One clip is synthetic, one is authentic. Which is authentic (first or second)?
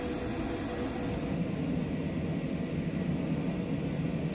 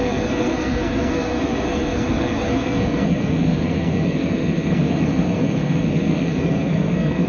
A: first